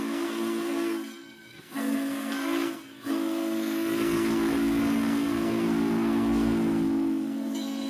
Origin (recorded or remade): remade